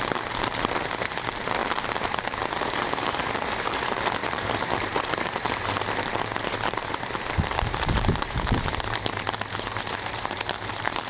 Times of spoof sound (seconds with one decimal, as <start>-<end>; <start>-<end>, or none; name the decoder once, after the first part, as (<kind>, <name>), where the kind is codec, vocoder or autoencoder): 0.0-1.6 (vocoder, BigVGAN v2); 2.1-11.1